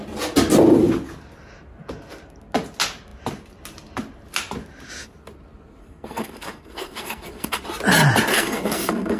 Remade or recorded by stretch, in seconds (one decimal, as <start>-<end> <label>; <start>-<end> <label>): 0.0-5.8 recorded; 5.8-7.6 remade; 7.6-8.3 recorded; 8.3-9.2 remade